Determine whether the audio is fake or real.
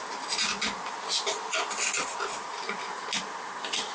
real